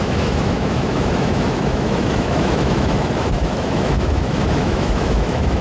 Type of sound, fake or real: fake